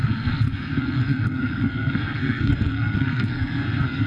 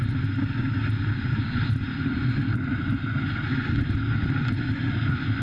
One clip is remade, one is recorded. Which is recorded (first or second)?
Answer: second